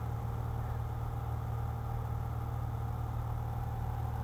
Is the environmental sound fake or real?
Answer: real